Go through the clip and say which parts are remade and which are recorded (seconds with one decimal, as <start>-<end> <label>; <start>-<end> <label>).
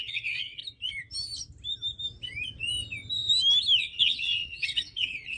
0.0-0.6 remade; 0.6-3.8 recorded; 3.8-5.4 remade